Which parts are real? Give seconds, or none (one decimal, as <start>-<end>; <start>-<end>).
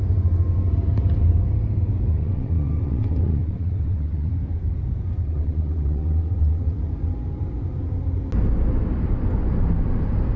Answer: 0.0-2.1; 4.3-5.2; 6.8-10.4